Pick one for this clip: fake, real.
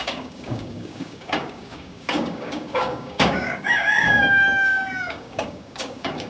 fake